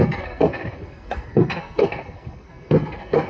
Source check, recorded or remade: remade